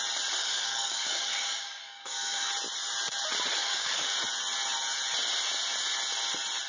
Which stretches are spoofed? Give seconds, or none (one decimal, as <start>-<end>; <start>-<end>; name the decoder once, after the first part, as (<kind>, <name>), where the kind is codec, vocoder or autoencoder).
0.4-2.5 (codec, DAC); 3.6-4.1